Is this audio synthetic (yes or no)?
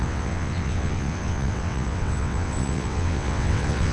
yes